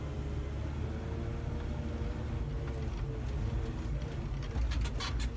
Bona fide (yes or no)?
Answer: yes